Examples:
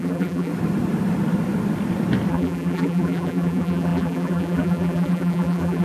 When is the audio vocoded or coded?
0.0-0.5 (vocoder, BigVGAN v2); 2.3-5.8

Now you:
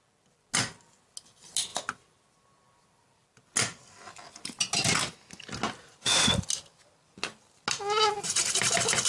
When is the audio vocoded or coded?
none

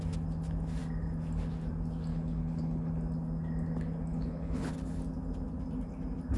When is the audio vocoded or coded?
2.1-2.9 (codec, HILCodec); 4.1-4.7

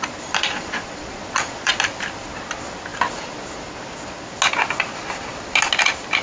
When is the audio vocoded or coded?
0.4-1.8 (vocoder, Vocos)

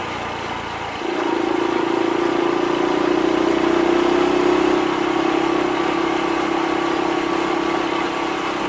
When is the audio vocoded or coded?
none

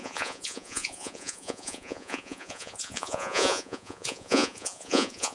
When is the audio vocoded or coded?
0.0-5.3 (vocoder, Vocos)

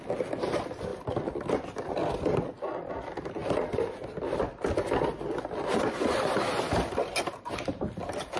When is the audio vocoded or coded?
none